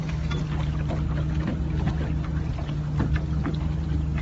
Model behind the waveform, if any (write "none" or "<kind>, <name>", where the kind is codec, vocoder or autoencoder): none